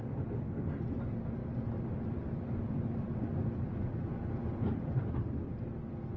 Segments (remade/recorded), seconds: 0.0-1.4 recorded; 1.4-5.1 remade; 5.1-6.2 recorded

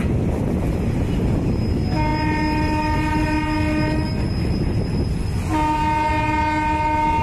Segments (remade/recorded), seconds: 0.0-7.2 recorded

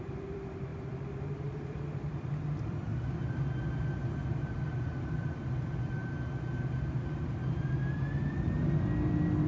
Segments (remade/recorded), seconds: 0.0-2.9 remade; 2.9-5.0 recorded; 5.0-6.0 remade; 6.0-7.6 recorded; 7.6-8.2 remade; 8.2-9.5 recorded

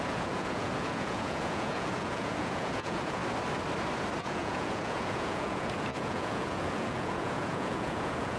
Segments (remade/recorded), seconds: 0.0-3.2 remade; 3.2-4.2 recorded; 4.2-8.4 remade

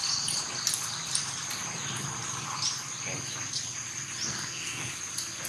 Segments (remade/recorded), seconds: 0.0-4.3 recorded; 4.3-4.9 remade; 4.9-5.5 recorded